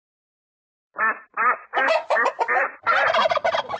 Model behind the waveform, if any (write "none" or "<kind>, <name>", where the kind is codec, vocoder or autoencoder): vocoder, BigVGAN v2